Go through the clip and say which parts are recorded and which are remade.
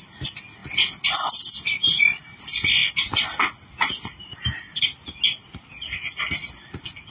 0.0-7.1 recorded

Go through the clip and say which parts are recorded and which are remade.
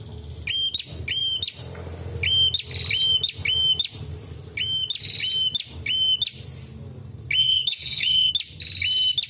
0.0-7.4 recorded; 7.4-8.3 remade; 8.3-9.3 recorded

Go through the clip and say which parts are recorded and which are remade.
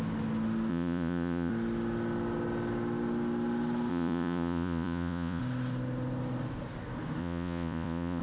0.0-0.7 recorded; 0.7-1.5 remade; 1.5-3.9 recorded; 3.9-5.4 remade; 5.4-7.2 recorded; 7.2-8.2 remade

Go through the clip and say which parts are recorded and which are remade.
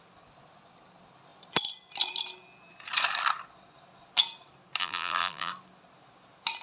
0.0-4.8 recorded; 4.8-5.5 remade; 5.5-6.6 recorded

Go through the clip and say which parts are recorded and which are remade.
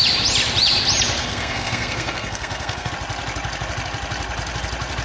0.0-1.2 recorded; 1.2-2.9 remade; 2.9-5.0 recorded